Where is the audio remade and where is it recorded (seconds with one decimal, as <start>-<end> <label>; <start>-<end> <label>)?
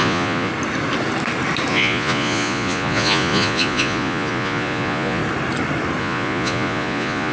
0.0-0.5 remade; 0.5-1.7 recorded; 1.7-5.2 remade; 5.2-6.0 recorded; 6.0-7.3 remade